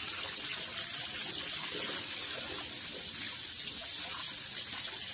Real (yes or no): yes